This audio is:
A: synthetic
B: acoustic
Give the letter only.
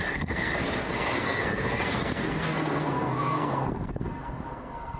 A